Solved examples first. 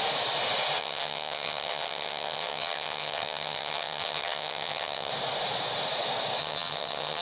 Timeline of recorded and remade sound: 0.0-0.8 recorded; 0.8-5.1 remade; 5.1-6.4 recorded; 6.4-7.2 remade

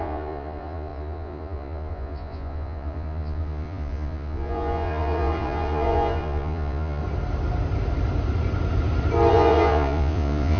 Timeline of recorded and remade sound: 0.0-7.0 remade; 7.0-9.3 recorded; 9.3-10.6 remade

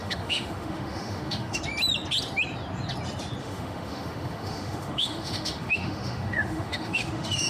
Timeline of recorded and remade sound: 0.0-1.6 remade; 1.6-3.4 recorded; 3.4-7.5 remade

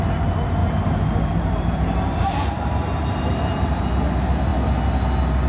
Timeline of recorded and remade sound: 0.0-0.6 recorded; 0.6-3.8 remade; 3.8-5.5 recorded

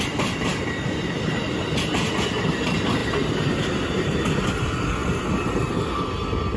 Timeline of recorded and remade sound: 0.0-6.6 recorded

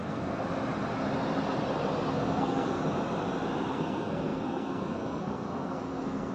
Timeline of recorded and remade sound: 0.0-0.4 remade; 0.4-2.1 recorded; 2.1-2.8 remade; 2.8-3.7 recorded; 3.7-6.3 remade

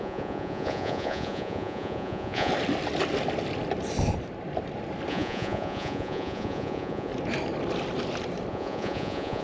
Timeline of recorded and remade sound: 0.0-2.5 remade; 2.5-5.1 recorded; 5.1-7.1 remade; 7.1-8.5 recorded; 8.5-9.4 remade